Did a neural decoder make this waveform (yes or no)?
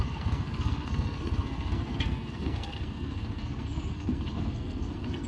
yes